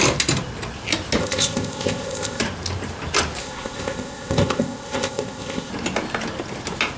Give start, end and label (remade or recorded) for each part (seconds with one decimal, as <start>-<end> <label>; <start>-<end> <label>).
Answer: 0.0-1.2 recorded; 1.2-2.4 remade; 2.4-3.4 recorded; 3.4-5.7 remade; 5.7-7.0 recorded